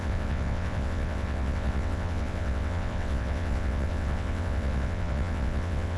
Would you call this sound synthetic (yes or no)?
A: yes